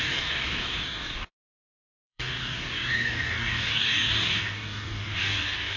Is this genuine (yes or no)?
no